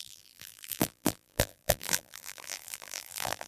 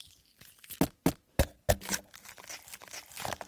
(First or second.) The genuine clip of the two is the second